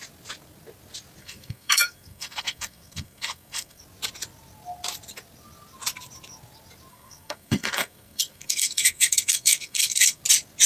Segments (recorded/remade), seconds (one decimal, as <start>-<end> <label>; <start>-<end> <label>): 0.0-1.2 recorded; 1.2-3.8 remade; 3.8-6.9 recorded; 6.9-10.2 remade; 10.2-10.7 recorded